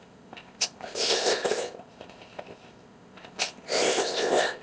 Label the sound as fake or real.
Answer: fake